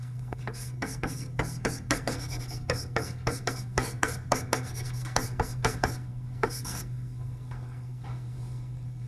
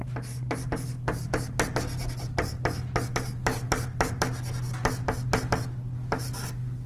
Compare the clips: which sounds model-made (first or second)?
first